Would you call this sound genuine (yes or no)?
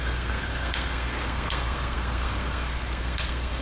no